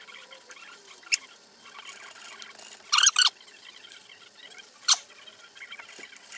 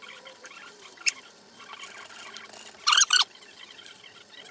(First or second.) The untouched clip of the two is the first